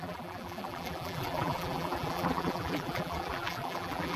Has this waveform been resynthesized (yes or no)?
yes